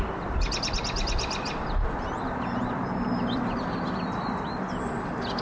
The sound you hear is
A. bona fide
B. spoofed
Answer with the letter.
A